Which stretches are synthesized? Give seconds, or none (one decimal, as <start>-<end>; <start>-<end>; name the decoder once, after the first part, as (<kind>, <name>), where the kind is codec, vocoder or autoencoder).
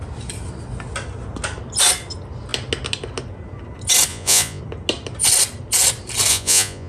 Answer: 4.1-4.6 (vocoder, Vocos); 6.3-6.9